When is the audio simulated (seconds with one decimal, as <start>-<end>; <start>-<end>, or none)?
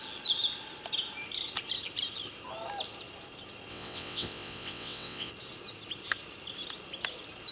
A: 3.7-5.3